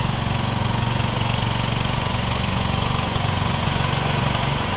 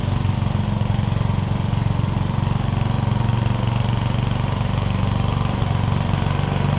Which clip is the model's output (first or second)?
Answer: first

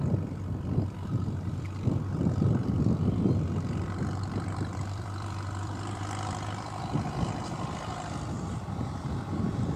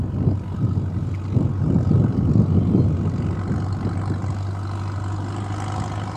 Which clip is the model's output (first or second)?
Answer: first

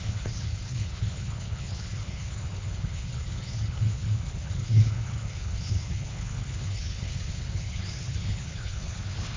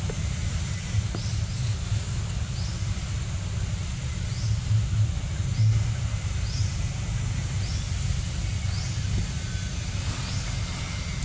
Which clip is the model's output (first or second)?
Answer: first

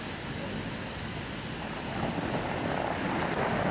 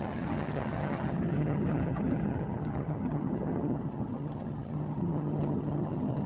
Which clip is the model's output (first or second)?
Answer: second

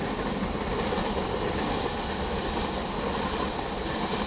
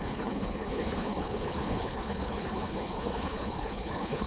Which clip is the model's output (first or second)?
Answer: second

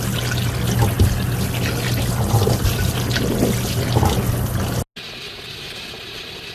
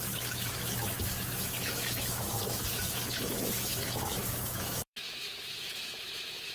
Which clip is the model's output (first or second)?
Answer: second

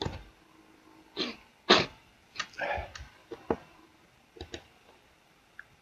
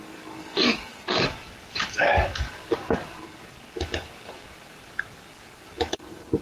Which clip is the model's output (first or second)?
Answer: second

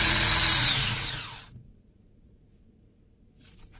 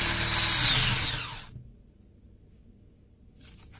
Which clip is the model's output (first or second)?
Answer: first